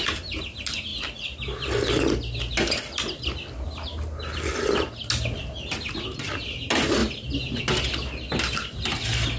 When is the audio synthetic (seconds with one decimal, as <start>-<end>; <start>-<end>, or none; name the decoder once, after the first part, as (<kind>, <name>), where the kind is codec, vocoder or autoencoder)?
none